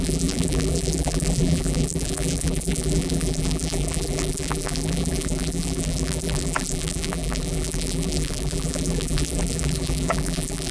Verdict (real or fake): fake